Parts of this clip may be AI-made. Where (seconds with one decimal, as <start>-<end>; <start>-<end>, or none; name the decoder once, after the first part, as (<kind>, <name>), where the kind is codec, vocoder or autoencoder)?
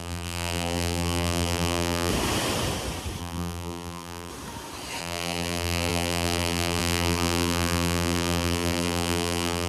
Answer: 0.0-2.1 (vocoder, BigVGAN v2); 3.2-4.3; 5.0-9.7